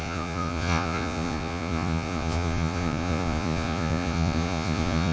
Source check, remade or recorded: remade